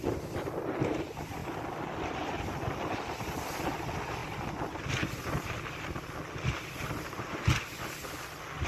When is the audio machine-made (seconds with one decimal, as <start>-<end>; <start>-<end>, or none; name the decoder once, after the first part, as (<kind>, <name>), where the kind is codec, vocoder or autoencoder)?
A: none